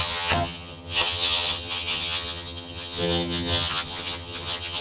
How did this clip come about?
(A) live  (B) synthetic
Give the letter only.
B